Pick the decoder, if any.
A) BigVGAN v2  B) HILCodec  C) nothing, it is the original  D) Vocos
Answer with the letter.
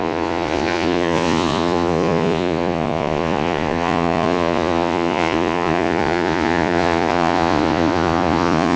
D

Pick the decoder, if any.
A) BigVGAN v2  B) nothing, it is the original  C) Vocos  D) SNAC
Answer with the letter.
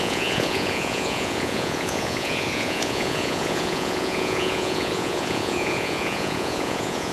C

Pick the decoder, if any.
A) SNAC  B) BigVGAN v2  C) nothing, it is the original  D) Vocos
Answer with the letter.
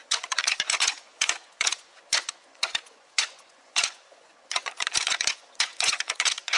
D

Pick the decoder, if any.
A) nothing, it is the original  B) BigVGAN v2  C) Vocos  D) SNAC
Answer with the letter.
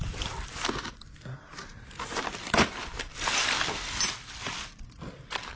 A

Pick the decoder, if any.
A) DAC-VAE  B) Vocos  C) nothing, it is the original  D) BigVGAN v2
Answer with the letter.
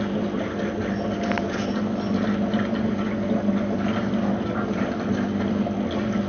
C